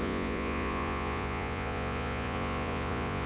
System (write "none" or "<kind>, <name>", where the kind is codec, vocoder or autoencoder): vocoder, Vocos